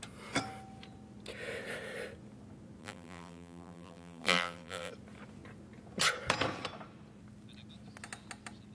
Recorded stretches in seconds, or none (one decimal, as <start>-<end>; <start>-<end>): 0.0-2.8; 4.9-8.7